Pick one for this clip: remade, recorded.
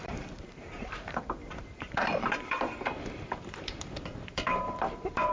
remade